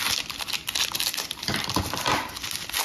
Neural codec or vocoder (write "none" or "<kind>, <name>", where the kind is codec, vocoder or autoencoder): none